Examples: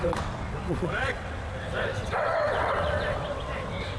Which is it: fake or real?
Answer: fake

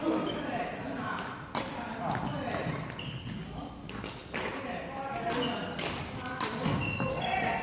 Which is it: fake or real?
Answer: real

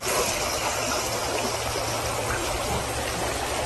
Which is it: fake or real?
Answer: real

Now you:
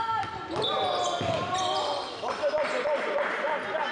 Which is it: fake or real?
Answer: real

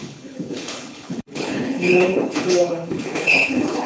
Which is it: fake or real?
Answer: fake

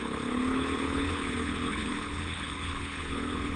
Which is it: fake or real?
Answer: fake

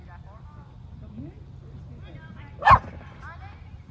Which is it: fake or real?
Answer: real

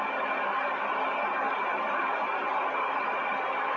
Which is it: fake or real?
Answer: real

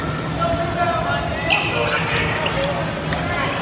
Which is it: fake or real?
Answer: real